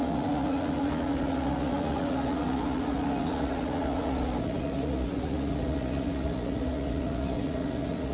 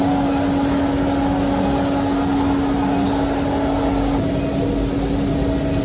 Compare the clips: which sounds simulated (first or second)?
first